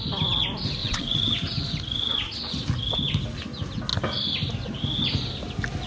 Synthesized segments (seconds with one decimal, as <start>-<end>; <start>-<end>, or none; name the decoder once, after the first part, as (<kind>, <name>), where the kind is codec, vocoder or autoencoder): 0.8-1.3 (vocoder, WaveNeXt)